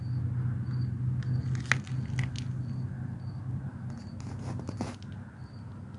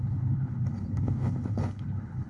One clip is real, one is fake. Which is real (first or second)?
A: first